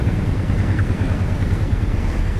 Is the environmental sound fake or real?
fake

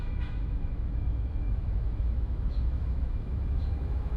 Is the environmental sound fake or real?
fake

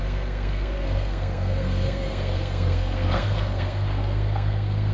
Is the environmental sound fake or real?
fake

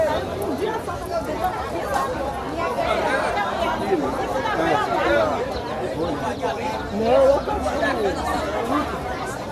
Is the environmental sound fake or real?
real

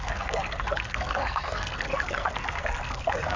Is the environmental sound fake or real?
fake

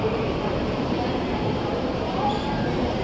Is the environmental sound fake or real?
fake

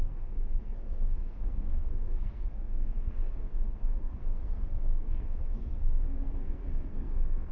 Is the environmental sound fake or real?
fake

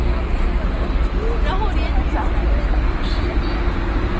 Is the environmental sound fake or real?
real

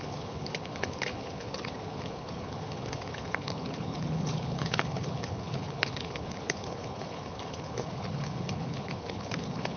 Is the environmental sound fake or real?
fake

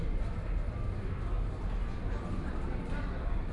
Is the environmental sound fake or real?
real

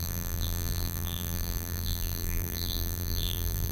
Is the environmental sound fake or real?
fake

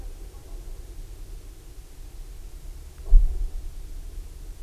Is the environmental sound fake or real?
real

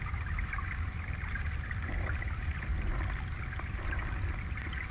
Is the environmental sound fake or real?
fake